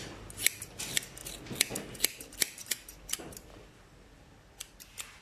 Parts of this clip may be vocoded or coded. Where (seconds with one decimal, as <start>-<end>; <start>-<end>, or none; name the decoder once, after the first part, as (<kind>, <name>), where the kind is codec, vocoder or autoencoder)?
none